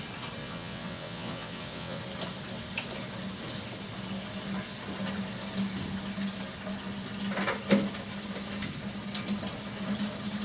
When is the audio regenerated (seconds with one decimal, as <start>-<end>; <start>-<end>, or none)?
0.4-2.0